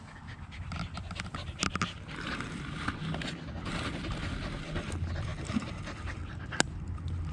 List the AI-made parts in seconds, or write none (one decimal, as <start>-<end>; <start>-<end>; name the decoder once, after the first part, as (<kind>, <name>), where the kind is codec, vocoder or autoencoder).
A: none